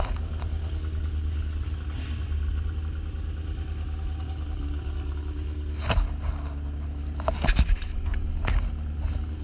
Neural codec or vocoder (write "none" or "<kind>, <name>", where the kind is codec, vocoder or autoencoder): none